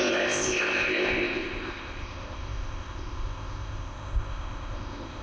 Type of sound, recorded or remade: remade